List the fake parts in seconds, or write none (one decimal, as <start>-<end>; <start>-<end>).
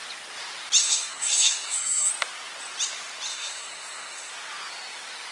0.8-2.1; 3.3-4.3